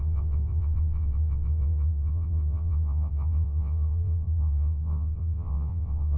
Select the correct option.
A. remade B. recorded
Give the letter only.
A